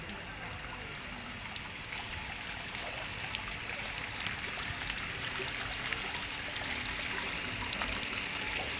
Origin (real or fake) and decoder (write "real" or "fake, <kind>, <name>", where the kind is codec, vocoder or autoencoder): real